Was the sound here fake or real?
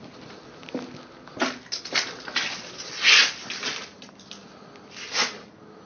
real